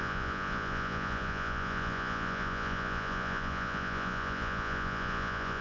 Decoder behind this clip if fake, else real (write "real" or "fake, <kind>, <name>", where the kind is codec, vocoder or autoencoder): fake, vocoder, Vocos